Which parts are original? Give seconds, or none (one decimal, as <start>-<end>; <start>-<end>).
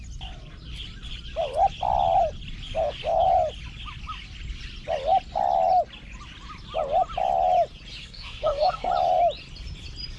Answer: 0.0-8.0; 8.9-10.2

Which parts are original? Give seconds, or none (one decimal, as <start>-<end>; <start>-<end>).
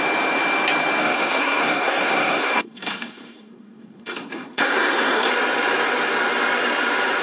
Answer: 0.0-1.0; 5.3-7.2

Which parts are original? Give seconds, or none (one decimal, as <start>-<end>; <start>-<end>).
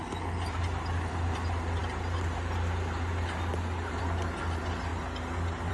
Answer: 0.0-5.7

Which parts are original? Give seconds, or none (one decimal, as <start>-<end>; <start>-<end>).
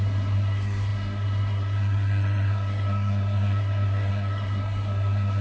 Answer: none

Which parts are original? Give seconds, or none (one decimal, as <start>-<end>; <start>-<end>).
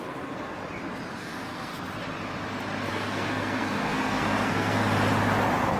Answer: 0.6-1.1; 1.7-2.9; 4.8-5.8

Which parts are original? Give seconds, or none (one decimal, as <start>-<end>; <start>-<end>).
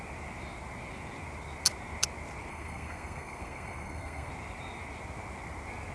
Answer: 0.0-2.5; 4.3-5.9